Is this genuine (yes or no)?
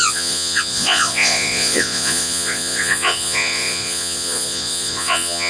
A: no